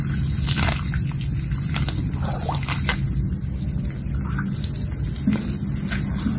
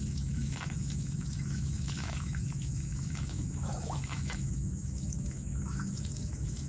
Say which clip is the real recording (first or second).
first